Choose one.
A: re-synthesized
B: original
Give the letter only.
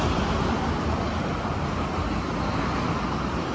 B